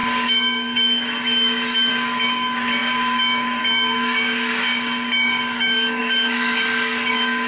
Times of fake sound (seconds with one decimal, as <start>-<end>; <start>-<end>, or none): 0.0-7.5